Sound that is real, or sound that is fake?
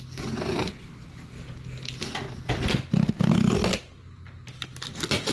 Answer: real